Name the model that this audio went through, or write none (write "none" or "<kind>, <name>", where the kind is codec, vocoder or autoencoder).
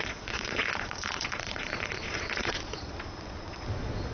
vocoder, Vocos